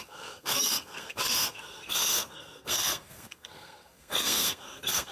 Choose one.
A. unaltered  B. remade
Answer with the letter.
B